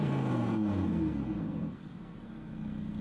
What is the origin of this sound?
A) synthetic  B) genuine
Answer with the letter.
A